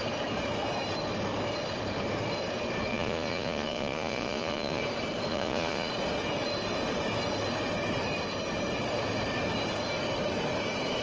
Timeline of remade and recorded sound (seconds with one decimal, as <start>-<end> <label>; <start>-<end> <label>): 0.0-2.9 recorded; 2.9-4.8 remade; 4.8-5.3 recorded; 5.3-5.9 remade; 5.9-11.0 recorded